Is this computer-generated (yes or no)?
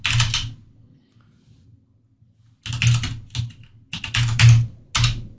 no